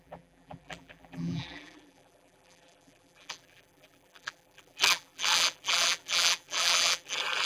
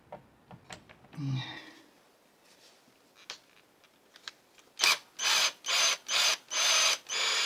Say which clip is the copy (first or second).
first